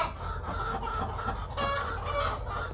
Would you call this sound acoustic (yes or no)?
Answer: yes